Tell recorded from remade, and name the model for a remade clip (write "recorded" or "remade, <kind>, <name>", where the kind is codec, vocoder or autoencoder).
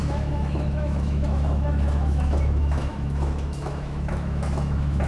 remade, autoencoder, DAC-VAE